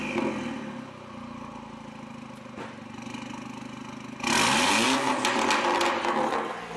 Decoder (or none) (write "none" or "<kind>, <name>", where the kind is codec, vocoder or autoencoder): none